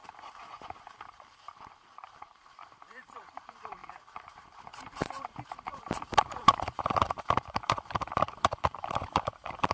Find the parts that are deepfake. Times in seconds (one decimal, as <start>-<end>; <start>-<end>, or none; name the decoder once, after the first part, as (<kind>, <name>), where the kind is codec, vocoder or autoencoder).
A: 2.1-9.7 (vocoder, BigVGAN v2)